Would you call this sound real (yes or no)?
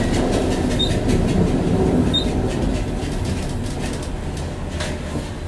yes